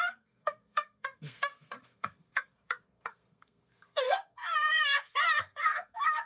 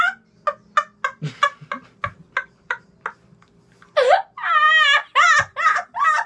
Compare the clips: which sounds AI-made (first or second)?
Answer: first